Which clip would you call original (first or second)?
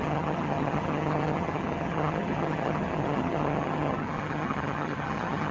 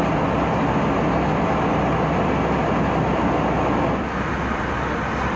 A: second